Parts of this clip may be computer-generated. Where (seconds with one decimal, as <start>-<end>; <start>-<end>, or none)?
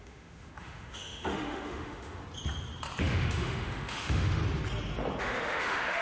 0.0-2.2; 3.0-4.4; 5.2-6.0